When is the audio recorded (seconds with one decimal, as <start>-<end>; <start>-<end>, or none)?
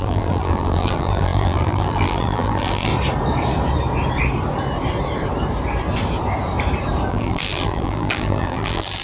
2.9-7.1